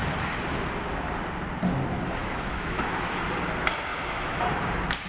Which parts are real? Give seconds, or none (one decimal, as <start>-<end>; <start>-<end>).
0.0-2.2; 3.2-3.9; 4.6-5.1